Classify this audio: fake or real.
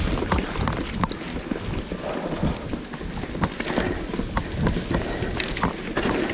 real